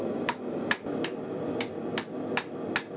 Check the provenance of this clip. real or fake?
real